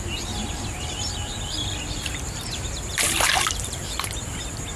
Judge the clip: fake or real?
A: fake